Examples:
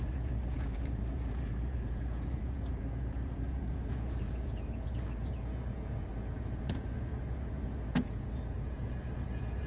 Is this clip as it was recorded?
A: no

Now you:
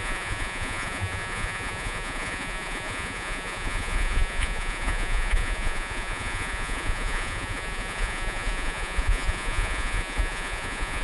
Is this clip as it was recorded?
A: no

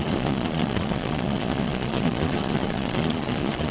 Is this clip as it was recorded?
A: no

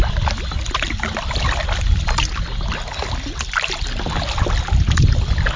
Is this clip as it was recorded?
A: yes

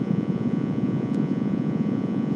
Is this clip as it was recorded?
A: no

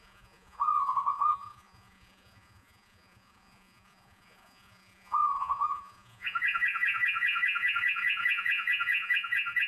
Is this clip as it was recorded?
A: no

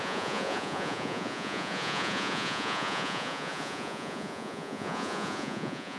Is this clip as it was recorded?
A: no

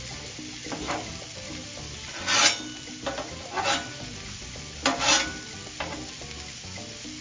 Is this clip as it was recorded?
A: yes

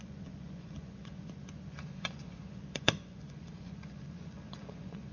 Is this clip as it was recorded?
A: no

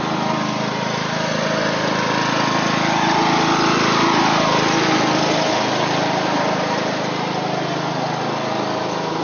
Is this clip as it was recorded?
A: yes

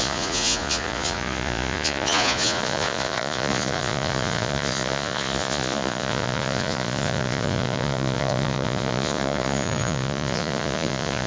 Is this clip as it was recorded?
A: no